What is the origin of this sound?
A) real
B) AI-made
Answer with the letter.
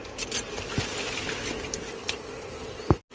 A